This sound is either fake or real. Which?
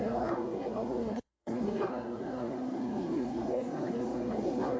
fake